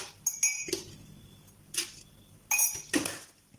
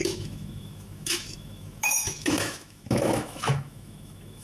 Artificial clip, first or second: second